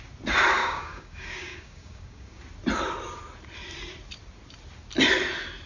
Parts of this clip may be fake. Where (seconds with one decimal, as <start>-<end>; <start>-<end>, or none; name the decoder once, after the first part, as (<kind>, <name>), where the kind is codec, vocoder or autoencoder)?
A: 0.6-2.4 (codec, DAC)